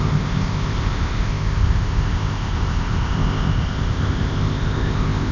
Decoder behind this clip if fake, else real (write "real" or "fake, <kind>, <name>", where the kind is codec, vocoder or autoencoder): fake, codec, ZipCodec